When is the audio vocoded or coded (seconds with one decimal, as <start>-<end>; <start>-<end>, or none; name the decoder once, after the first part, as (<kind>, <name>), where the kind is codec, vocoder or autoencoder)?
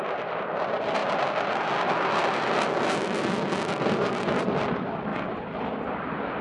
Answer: 0.0-1.0 (vocoder, BigVGAN v2); 3.7-5.1; 5.6-6.4